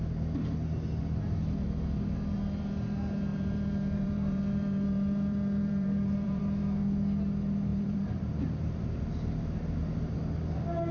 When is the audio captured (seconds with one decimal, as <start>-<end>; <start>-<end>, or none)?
0.0-3.3; 6.4-7.7; 9.0-10.9